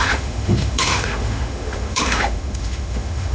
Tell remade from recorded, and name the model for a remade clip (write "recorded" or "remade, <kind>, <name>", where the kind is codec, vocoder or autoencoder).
remade, autoencoder, DAC-VAE